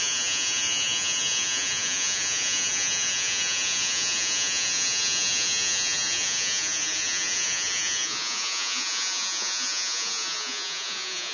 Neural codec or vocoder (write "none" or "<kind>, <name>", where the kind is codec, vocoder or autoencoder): vocoder, Vocos